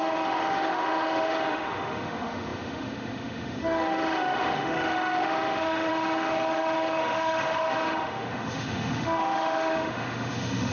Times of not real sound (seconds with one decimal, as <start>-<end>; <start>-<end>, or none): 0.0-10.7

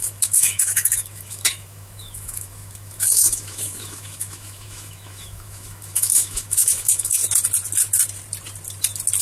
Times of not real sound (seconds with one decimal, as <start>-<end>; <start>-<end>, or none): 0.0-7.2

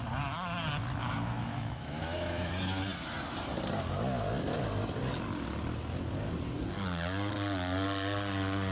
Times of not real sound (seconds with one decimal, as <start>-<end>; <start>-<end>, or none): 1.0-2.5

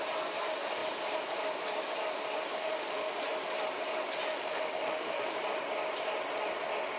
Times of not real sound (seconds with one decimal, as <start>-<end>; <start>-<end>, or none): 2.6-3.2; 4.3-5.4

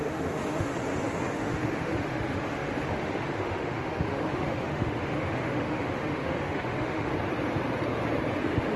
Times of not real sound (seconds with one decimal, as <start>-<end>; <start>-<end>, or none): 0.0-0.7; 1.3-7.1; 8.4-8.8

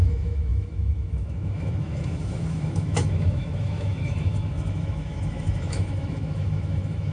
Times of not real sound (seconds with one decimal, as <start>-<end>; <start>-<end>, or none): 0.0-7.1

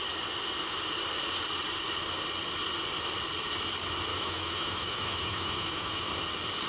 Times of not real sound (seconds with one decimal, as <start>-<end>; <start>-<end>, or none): 4.1-6.1